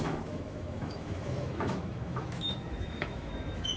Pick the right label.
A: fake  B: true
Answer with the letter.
A